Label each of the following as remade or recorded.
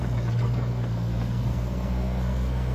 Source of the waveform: remade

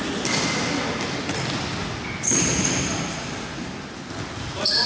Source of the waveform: recorded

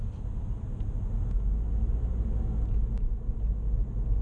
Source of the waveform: recorded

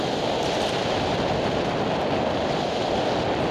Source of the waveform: recorded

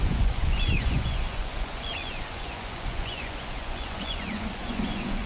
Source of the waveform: remade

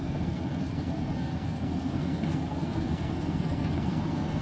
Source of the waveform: remade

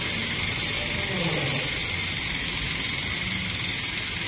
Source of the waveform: recorded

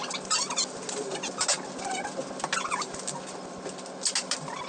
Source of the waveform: recorded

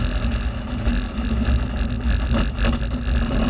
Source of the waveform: recorded